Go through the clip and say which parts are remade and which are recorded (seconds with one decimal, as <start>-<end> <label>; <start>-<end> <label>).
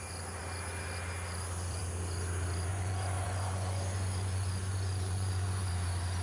0.0-2.7 recorded; 2.7-5.7 remade; 5.7-6.2 recorded